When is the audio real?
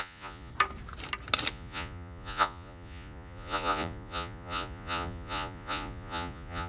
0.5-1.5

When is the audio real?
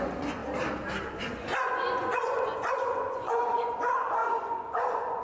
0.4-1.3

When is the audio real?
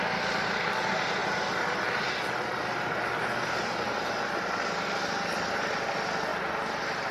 0.0-7.1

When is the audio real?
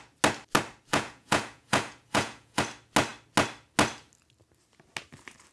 0.0-0.9; 2.6-5.5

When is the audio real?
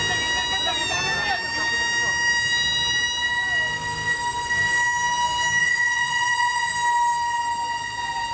0.0-5.6; 6.7-8.3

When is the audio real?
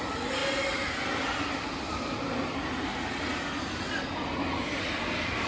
0.0-5.5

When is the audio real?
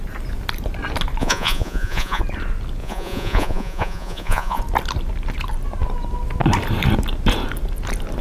0.0-1.2; 2.2-2.8; 4.6-8.2